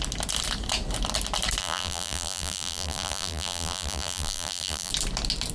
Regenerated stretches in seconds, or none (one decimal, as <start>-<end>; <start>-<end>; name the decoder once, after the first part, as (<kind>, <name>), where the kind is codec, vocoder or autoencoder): 1.6-4.9 (vocoder, BigVGAN v2)